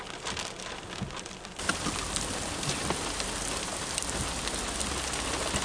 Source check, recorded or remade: recorded